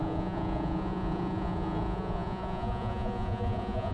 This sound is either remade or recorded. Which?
remade